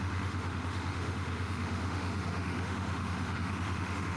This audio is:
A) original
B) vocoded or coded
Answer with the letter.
B